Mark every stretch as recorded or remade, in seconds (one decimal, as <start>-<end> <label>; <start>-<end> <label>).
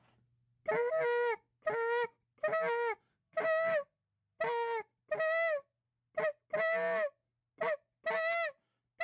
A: 0.0-3.1 recorded; 3.1-4.4 remade; 4.4-9.0 recorded